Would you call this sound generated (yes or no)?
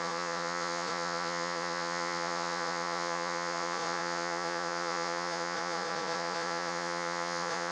yes